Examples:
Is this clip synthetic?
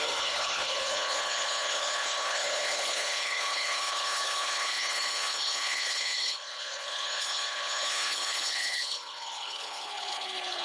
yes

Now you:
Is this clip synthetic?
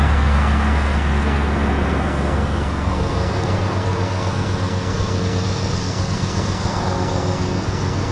yes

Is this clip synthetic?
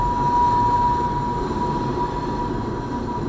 no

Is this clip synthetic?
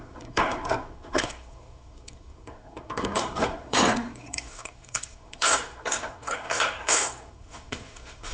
yes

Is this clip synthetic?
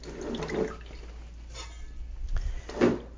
no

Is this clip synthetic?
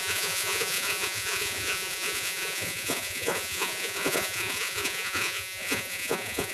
yes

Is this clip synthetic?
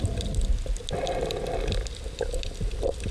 no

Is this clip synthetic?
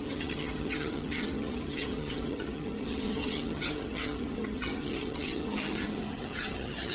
yes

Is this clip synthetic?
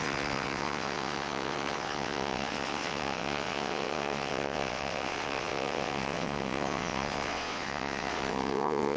yes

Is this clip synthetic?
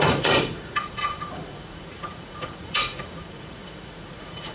yes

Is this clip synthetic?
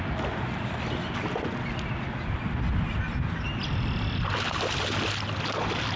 no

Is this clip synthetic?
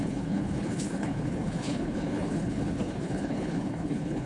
yes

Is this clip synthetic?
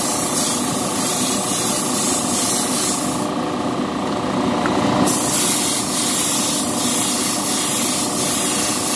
no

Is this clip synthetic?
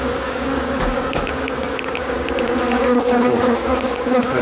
yes